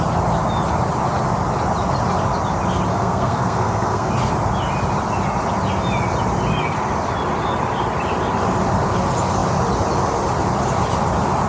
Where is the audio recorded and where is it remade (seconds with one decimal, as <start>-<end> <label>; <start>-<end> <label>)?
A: 0.0-2.9 recorded; 2.9-4.1 remade; 4.1-11.5 recorded